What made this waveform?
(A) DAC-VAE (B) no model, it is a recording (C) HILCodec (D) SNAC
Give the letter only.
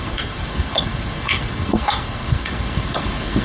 D